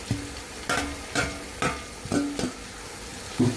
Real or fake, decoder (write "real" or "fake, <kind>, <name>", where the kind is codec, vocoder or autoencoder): real